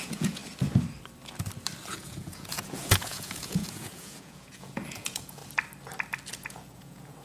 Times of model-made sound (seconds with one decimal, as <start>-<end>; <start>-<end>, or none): 0.0-0.4; 1.9-5.4; 6.3-7.2